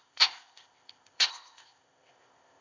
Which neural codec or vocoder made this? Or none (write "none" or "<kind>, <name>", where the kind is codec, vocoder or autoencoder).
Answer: codec, ZipCodec